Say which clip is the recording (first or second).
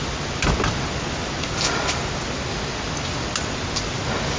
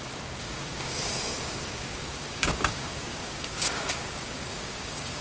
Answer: first